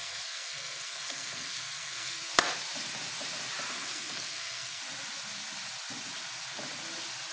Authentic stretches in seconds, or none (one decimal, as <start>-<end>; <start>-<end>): 2.3-3.7; 4.8-7.3